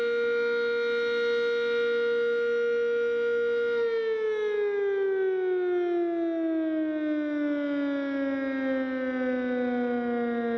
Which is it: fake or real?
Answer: real